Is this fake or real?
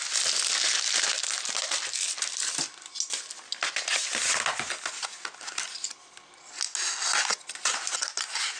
real